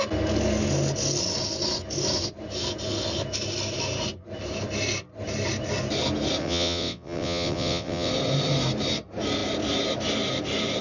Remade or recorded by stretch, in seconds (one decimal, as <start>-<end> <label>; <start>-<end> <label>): 0.0-6.4 recorded; 6.4-8.1 remade; 8.1-10.8 recorded